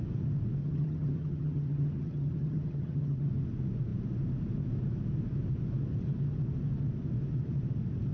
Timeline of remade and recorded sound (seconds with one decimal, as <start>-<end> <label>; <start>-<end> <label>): 0.0-0.6 recorded; 0.6-3.3 remade; 3.3-8.1 recorded